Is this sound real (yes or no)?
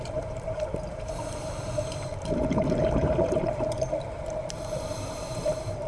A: no